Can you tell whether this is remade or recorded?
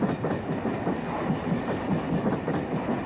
recorded